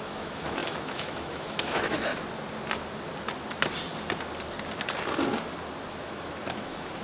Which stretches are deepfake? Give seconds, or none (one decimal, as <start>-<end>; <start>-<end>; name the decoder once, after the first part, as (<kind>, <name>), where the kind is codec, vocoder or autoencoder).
0.0-2.1 (autoencoder, DAC-VAE); 5.9-7.0